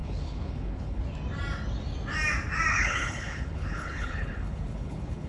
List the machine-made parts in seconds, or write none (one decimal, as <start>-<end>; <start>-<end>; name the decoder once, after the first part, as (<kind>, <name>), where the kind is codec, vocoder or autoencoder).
0.0-1.0 (codec, HILCodec); 2.7-5.3